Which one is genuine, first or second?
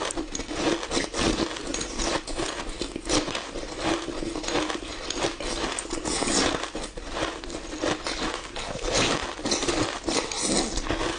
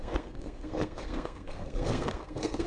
first